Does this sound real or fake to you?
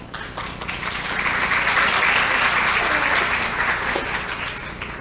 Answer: real